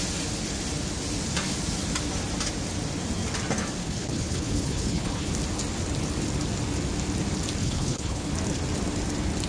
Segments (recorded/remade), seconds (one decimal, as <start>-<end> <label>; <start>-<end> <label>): 0.0-3.8 recorded; 3.8-5.3 remade; 5.3-7.6 recorded; 7.6-8.3 remade; 8.3-9.5 recorded